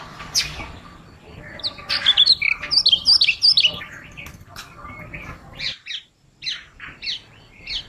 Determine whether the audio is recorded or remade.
recorded